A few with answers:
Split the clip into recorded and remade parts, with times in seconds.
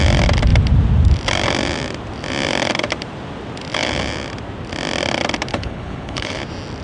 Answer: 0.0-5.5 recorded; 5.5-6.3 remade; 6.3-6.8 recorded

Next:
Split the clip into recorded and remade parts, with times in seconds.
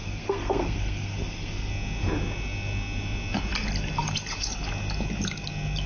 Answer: 0.0-1.7 remade; 1.7-5.9 recorded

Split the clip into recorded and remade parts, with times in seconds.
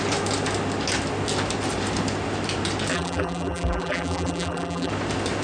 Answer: 0.0-2.9 recorded; 2.9-4.9 remade; 4.9-5.4 recorded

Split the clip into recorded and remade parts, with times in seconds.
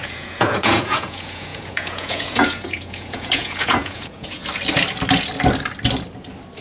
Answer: 0.0-4.4 remade; 4.4-6.6 recorded